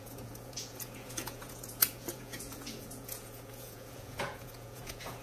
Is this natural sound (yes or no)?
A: no